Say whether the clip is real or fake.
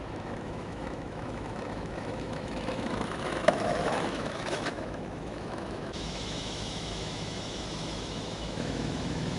fake